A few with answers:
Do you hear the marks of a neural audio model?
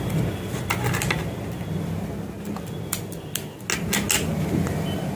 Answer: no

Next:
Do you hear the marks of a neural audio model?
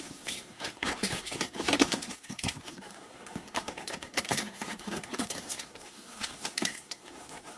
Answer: yes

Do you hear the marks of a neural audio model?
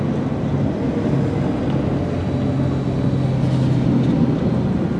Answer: no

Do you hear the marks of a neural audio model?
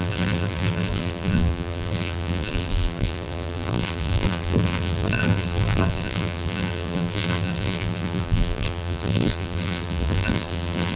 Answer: yes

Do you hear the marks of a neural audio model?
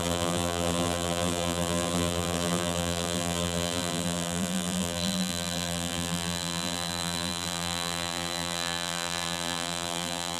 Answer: yes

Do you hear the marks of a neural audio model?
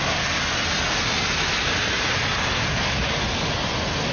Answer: no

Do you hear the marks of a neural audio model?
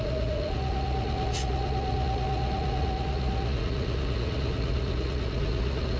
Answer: yes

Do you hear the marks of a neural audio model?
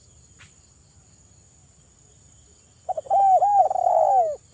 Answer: no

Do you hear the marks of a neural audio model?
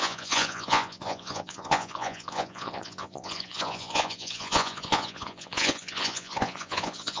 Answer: yes